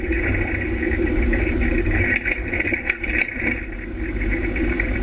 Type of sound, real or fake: real